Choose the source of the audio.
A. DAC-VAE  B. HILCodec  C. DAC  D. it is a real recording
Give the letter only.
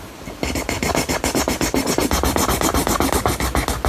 D